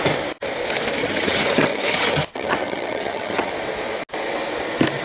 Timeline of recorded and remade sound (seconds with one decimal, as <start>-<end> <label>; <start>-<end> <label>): 0.0-1.0 recorded; 1.0-3.5 remade; 3.5-5.0 recorded